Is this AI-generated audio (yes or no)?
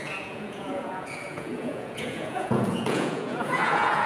yes